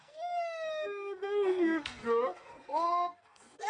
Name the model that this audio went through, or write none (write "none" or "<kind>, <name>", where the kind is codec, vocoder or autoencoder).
codec, SNAC